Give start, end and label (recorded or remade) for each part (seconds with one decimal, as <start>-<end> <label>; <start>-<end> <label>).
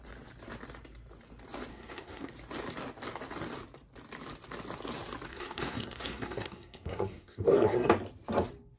0.0-1.7 recorded; 1.7-2.3 remade; 2.3-5.3 recorded; 5.3-7.9 remade; 7.9-8.8 recorded